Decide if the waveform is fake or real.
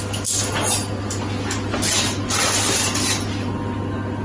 real